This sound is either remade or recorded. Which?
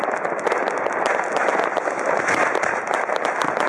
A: recorded